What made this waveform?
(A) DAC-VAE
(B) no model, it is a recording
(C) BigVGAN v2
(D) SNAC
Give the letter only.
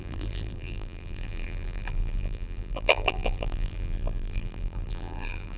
C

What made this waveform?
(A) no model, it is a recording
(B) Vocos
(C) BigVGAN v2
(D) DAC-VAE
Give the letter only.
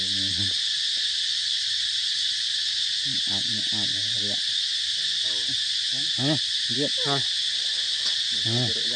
A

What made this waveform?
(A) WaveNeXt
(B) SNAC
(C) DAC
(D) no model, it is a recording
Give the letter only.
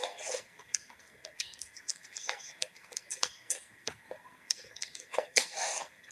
B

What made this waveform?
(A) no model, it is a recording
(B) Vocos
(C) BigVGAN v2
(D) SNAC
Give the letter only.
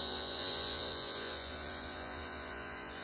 B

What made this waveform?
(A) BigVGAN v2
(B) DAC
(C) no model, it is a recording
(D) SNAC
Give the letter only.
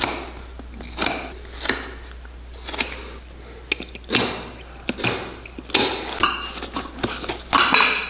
C